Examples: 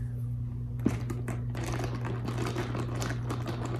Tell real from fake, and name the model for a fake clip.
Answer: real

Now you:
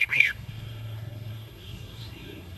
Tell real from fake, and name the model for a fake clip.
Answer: fake, codec, SNAC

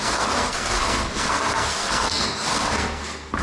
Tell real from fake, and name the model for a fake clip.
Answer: fake, codec, SNAC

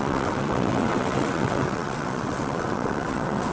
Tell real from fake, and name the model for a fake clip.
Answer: fake, vocoder, WaveNeXt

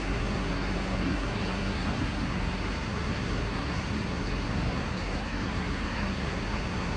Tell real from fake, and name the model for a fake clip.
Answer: fake, codec, SNAC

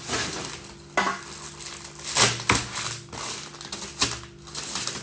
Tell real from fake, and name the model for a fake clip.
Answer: real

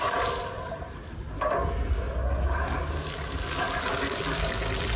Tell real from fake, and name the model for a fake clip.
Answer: real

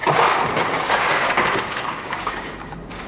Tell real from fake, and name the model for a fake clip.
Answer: fake, codec, DAC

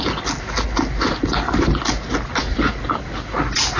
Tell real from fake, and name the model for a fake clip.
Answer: real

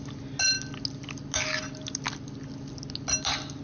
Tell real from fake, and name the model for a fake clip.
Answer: real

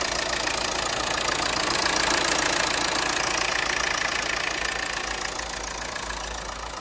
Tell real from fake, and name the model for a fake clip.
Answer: real